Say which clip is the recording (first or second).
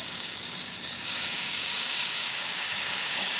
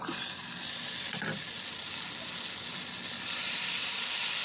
second